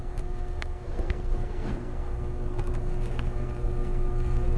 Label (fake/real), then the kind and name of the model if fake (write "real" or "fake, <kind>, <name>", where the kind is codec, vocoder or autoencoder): fake, codec, SNAC